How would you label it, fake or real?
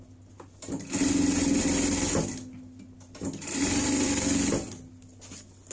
real